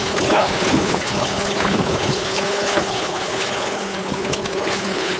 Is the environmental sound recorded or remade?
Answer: remade